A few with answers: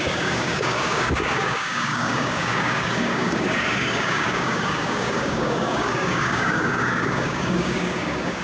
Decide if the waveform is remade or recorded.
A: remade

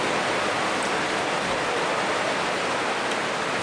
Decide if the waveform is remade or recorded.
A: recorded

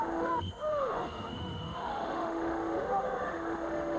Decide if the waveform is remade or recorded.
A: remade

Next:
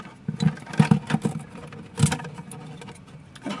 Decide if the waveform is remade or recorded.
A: recorded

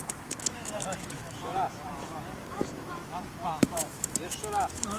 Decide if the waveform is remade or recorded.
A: remade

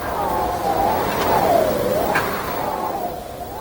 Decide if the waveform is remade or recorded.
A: recorded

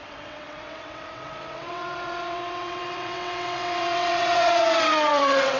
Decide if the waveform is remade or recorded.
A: remade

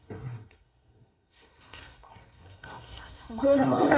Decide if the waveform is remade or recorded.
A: remade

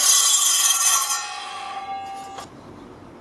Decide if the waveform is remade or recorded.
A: recorded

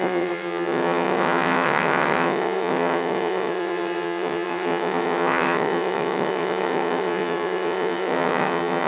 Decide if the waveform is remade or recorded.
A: remade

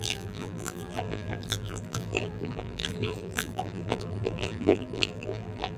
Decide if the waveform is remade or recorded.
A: remade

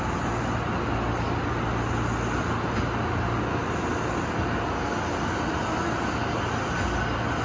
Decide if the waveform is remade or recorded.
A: recorded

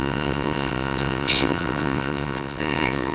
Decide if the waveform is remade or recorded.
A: remade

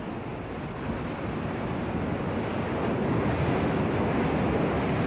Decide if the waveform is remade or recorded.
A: recorded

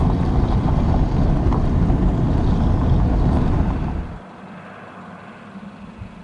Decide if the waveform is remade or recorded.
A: recorded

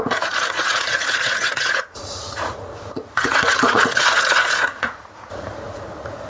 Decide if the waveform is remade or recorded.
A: remade